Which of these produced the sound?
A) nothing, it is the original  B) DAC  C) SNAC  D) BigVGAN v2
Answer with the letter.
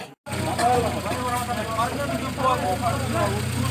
A